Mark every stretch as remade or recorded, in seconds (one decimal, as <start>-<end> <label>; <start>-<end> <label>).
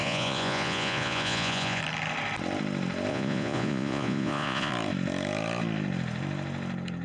0.0-1.8 remade; 1.8-3.1 recorded; 3.1-4.7 remade; 4.7-7.0 recorded